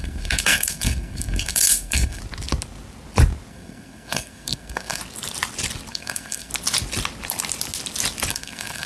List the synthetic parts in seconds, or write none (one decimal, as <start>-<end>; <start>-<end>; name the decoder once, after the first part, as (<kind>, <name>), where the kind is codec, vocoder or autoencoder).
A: 0.0-2.2 (codec, SNAC); 3.5-5.0; 5.9-6.5; 8.3-8.9